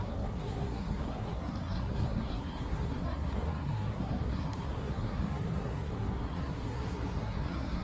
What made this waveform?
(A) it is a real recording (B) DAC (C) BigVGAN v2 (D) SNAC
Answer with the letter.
D